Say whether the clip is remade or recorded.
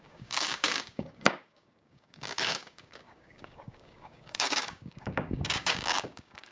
remade